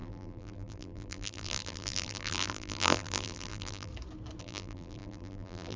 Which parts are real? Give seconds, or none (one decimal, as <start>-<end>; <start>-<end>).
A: 3.9-4.4